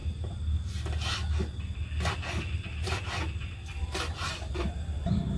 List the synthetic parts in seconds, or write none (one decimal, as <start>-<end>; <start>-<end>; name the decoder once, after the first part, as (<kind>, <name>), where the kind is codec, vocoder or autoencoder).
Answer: 3.8-5.4 (vocoder, BigVGAN v2)